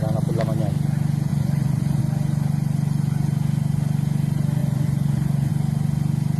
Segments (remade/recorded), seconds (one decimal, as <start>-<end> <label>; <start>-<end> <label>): 0.0-1.3 recorded; 1.3-2.0 remade; 2.0-4.6 recorded; 4.6-5.5 remade; 5.5-6.4 recorded